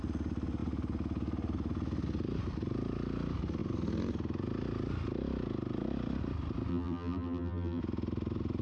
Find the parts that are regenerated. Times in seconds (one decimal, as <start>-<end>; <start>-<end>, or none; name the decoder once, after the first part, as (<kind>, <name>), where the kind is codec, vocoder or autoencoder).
6.7-7.8 (vocoder, BigVGAN v2)